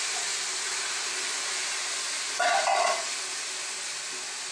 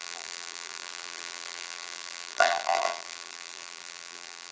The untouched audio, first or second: first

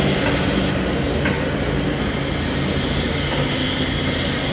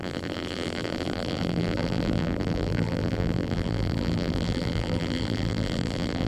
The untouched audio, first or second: first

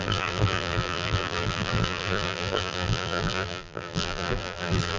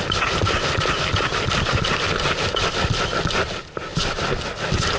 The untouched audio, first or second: second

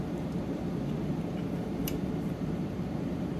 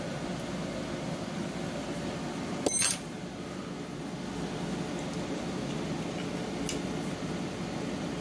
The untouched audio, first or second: second